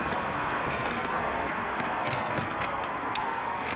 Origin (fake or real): fake